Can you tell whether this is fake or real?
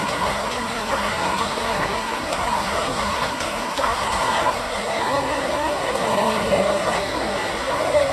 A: fake